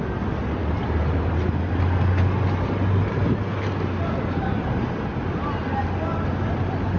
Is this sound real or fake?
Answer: real